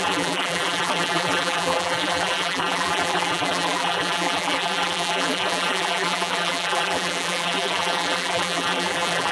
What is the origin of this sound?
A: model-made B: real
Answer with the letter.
A